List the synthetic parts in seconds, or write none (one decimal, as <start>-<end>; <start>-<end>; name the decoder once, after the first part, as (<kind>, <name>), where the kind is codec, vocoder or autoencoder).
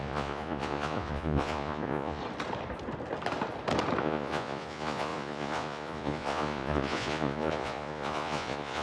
0.0-2.2 (vocoder, Vocos); 4.0-8.8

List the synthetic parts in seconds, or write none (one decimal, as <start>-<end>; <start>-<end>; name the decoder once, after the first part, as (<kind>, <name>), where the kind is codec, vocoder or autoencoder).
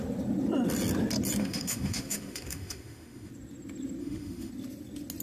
1.4-3.3 (autoencoder, DAC-VAE); 4.0-4.5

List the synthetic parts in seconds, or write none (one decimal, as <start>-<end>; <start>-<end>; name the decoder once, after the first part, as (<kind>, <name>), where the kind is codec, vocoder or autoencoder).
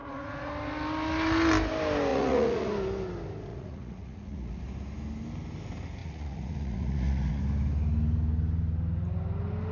0.0-0.5 (vocoder, Vocos); 2.1-2.7; 3.5-4.6; 6.0-7.4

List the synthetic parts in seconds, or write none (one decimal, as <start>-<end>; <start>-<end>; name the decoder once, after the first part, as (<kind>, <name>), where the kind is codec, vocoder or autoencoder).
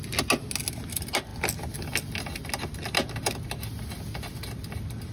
none